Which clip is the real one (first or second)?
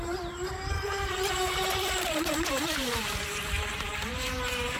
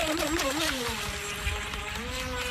second